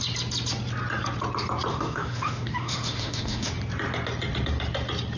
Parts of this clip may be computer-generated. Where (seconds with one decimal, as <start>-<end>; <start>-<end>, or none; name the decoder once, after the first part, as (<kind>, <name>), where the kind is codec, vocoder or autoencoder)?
1.7-3.5 (autoencoder, DAC-VAE)

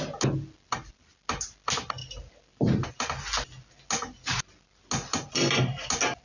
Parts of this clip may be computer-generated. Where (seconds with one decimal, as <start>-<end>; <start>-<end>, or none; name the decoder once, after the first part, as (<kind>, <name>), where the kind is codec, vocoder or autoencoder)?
none

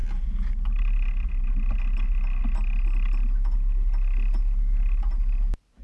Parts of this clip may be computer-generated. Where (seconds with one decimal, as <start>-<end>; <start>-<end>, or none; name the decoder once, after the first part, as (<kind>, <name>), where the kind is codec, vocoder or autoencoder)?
none

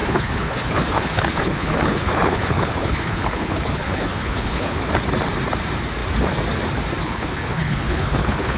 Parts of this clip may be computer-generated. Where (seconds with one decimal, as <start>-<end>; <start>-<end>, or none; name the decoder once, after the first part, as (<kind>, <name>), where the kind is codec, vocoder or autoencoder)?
0.0-4.9 (codec, HILCodec); 7.0-8.6

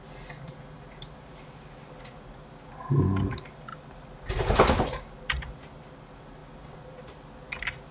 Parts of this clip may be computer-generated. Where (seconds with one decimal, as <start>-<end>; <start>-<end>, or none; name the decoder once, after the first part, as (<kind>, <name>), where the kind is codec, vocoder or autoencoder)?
none

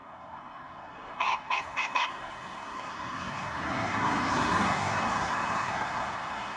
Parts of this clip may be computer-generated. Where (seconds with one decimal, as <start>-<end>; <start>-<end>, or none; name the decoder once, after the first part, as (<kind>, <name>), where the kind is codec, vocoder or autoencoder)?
0.0-6.6 (codec, SNAC)

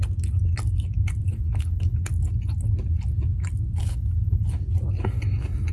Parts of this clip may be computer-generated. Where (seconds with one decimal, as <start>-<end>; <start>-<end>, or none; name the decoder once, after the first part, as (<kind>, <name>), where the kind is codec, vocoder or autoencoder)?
1.3-2.0 (codec, HILCodec); 3.8-4.5

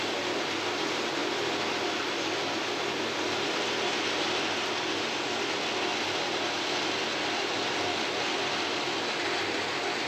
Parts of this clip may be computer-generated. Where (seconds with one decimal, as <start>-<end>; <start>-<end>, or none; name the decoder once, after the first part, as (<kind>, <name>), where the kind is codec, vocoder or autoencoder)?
none